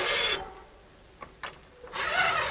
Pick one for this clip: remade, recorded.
recorded